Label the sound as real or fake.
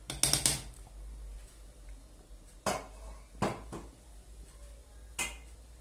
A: real